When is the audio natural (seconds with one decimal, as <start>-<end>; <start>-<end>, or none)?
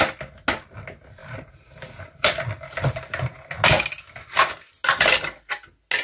0.0-1.2; 3.5-6.0